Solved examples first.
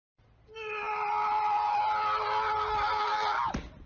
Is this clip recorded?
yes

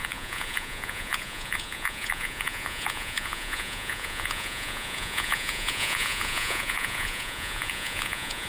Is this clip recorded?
no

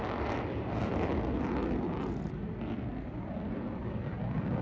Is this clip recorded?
yes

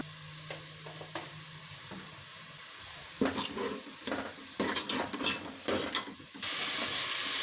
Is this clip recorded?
yes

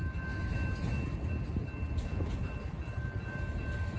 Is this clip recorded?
yes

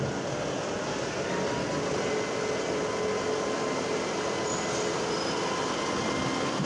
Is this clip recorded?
yes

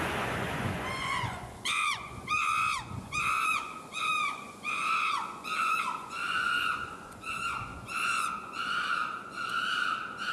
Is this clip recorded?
no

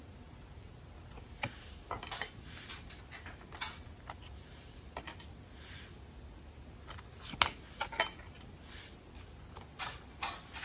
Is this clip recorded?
yes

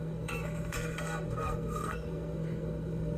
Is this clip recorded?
no